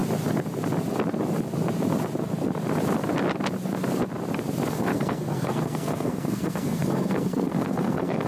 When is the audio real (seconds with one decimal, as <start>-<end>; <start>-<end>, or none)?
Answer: 0.0-4.7